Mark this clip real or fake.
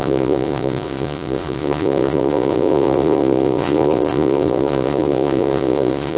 fake